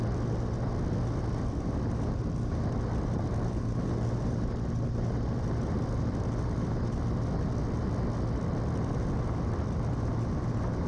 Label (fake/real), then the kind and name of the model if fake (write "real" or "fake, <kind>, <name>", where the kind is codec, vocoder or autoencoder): real